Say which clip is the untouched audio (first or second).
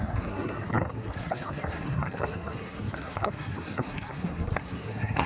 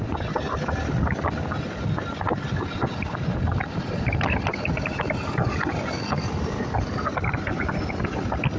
second